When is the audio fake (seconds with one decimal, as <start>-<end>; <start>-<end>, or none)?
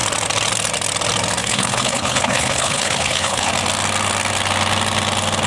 1.4-3.5